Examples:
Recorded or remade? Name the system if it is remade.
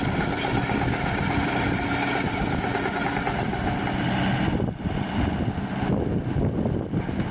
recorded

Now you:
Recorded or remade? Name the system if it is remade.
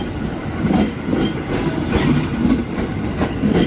recorded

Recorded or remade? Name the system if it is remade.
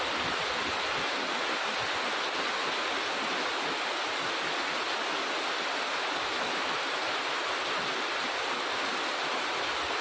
recorded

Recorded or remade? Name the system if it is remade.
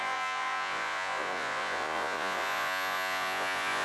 remade, vocoder, Vocos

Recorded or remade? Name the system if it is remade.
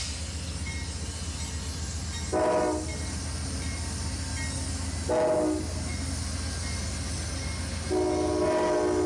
recorded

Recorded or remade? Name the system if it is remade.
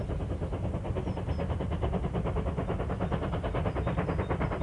recorded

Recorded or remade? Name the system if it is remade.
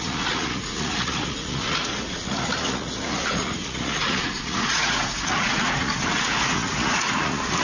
remade, vocoder, Vocos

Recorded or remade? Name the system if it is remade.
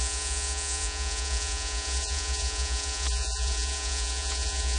remade, vocoder, Vocos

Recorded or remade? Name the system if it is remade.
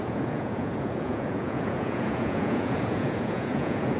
remade, vocoder, Vocos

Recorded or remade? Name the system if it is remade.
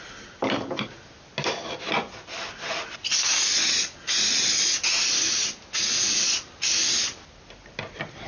recorded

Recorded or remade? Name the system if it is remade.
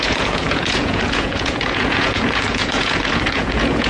remade, vocoder, Vocos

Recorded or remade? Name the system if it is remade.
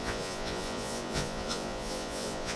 remade, vocoder, Vocos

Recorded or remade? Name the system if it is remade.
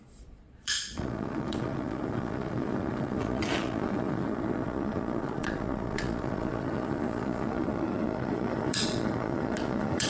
remade, vocoder, Vocos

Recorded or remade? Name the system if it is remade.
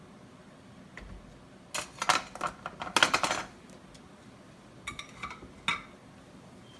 recorded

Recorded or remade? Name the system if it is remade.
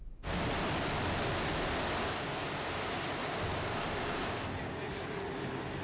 recorded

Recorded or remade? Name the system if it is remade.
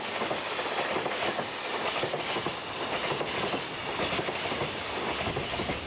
recorded